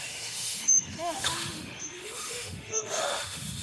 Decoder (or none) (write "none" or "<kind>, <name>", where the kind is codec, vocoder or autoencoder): autoencoder, DAC-VAE